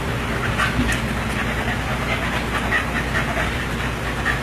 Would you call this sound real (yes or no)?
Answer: yes